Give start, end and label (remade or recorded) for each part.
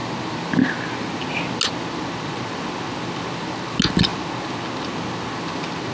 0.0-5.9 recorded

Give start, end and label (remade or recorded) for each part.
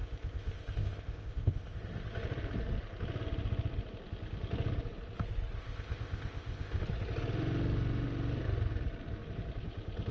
0.0-1.8 remade; 1.8-5.6 recorded; 5.6-6.8 remade; 6.8-10.1 recorded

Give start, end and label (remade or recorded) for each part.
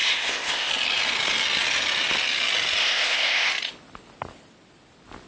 0.0-0.7 remade; 0.7-2.8 recorded; 2.8-3.5 remade; 3.5-5.3 recorded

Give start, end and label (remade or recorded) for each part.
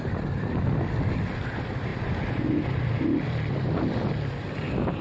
0.0-5.0 recorded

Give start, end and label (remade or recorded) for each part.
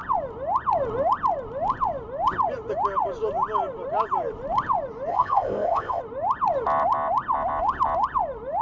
0.0-5.1 recorded; 5.1-6.0 remade; 6.0-8.6 recorded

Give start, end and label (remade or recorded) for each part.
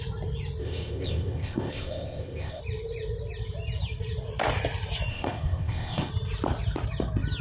0.0-0.6 recorded; 0.6-2.6 remade; 2.6-5.1 recorded; 5.1-6.1 remade; 6.1-7.4 recorded